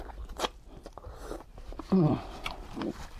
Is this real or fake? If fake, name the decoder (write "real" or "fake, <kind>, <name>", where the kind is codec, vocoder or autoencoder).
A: fake, vocoder, BigVGAN v2